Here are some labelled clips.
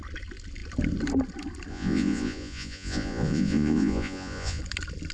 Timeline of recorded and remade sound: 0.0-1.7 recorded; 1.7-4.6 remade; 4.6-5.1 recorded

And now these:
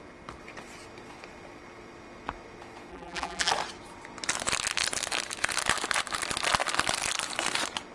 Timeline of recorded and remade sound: 0.0-2.9 recorded; 2.9-3.5 remade; 3.5-7.9 recorded